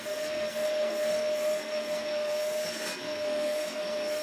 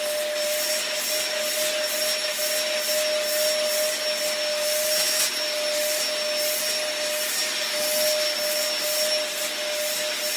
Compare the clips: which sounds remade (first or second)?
first